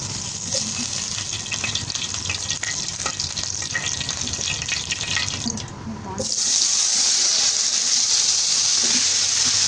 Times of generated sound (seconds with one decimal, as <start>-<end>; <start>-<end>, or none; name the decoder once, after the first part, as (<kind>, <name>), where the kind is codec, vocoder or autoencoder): 6.9-7.5 (vocoder, WaveNeXt)